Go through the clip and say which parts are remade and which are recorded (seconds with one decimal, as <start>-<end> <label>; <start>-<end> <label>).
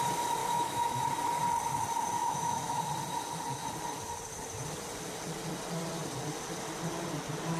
0.0-0.4 recorded; 0.4-1.0 remade; 1.0-2.2 recorded; 2.2-2.8 remade; 2.8-7.6 recorded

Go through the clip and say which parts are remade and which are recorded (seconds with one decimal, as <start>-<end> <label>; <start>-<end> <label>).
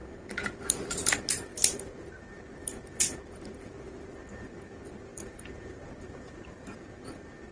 0.0-1.5 recorded; 1.5-2.1 remade; 2.1-5.1 recorded; 5.1-6.8 remade; 6.8-7.5 recorded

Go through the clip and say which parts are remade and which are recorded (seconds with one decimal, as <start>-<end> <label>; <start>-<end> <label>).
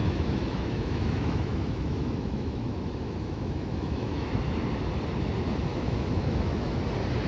0.0-4.4 remade; 4.4-5.7 recorded; 5.7-6.8 remade; 6.8-7.3 recorded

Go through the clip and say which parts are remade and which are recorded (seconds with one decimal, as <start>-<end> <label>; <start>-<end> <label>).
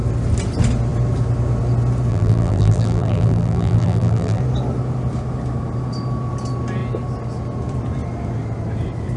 0.0-2.1 recorded; 2.1-4.4 remade; 4.4-9.2 recorded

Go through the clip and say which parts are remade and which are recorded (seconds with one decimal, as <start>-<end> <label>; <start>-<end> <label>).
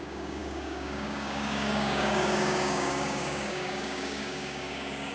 0.0-5.1 remade